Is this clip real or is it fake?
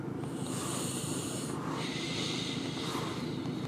real